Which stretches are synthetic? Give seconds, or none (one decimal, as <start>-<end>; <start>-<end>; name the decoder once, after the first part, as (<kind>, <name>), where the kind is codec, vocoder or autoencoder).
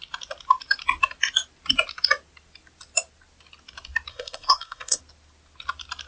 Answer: 4.1-5.0 (codec, SNAC)